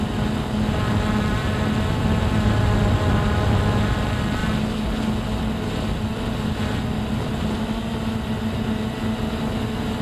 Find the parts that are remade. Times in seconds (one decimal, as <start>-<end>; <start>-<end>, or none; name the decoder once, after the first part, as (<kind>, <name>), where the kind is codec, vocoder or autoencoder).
none